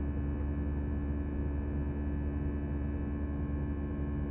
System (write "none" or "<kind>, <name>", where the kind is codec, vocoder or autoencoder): none